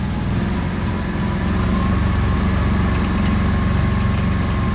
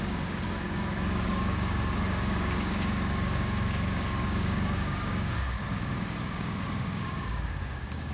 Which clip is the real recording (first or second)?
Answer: first